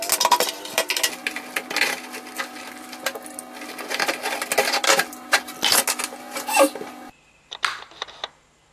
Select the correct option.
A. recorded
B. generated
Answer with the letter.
A